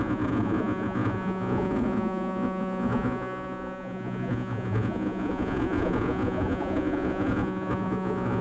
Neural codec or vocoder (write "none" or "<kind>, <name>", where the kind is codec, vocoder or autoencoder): vocoder, Vocos